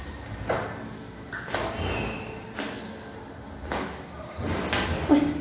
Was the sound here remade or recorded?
recorded